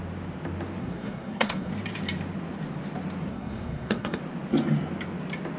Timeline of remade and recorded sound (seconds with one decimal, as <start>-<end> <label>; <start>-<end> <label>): 0.0-0.8 recorded; 0.8-1.7 remade; 1.7-3.3 recorded; 3.3-4.2 remade; 4.2-5.6 recorded